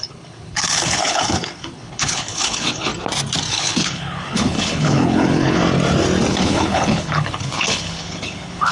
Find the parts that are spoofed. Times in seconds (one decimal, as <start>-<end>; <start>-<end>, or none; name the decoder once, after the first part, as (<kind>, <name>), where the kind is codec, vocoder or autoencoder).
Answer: 0.0-2.9 (codec, HILCodec); 3.5-5.6; 6.3-8.7